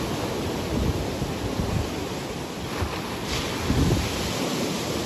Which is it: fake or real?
real